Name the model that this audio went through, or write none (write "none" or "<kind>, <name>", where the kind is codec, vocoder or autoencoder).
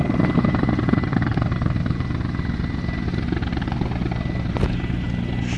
none